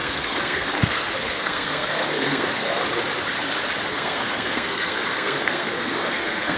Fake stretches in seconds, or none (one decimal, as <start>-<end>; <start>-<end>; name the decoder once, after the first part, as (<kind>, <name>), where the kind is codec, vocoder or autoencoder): 0.0-2.8 (codec, SNAC); 3.9-6.6